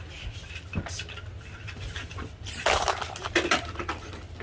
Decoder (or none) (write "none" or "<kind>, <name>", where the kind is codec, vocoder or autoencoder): none